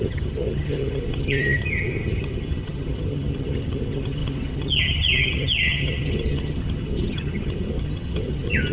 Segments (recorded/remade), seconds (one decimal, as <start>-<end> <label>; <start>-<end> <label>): 0.0-8.7 remade